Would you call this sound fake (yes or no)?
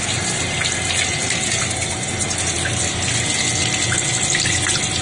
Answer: no